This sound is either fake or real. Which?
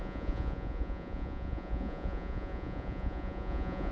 fake